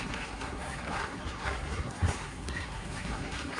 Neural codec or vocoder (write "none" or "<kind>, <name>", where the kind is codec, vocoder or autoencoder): codec, SNAC